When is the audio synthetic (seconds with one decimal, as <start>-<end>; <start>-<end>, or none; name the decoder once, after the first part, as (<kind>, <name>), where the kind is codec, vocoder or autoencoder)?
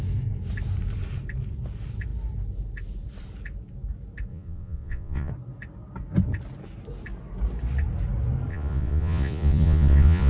4.3-5.3 (vocoder, Vocos); 8.5-10.3